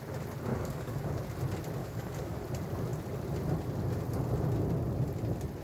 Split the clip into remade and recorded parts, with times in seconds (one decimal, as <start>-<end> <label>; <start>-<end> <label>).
0.0-0.5 recorded; 0.5-1.2 remade; 1.2-1.8 recorded; 1.8-2.4 remade; 2.4-5.6 recorded